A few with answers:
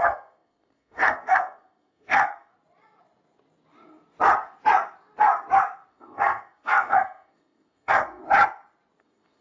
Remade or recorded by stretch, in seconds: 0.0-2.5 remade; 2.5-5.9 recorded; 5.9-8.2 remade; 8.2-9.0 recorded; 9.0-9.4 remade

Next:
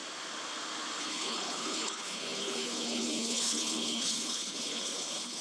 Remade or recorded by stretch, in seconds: 0.0-1.0 recorded; 1.0-5.4 remade